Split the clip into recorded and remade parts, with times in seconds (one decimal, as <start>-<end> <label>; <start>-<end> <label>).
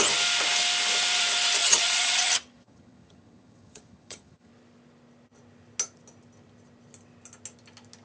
0.0-1.6 recorded; 1.6-4.5 remade; 4.5-8.0 recorded